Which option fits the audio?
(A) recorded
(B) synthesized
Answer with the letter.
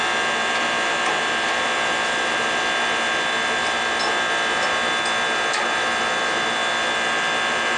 A